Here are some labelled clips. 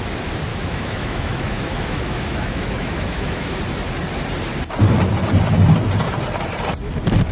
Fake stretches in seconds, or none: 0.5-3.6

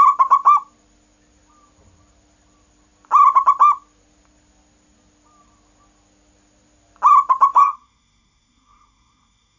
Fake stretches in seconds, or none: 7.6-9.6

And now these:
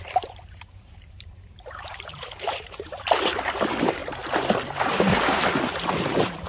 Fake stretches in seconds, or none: 0.0-4.0; 5.9-6.5

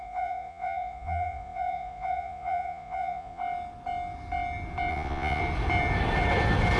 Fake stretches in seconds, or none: 0.0-3.4; 4.9-5.4